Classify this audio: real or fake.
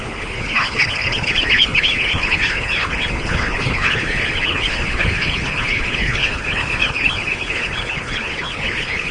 fake